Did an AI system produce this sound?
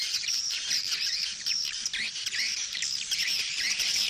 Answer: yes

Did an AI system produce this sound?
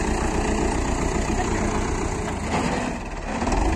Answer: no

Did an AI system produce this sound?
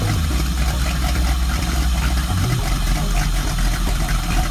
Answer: yes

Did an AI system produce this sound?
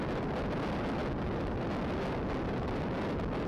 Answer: no